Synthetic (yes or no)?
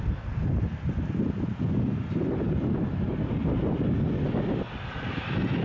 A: no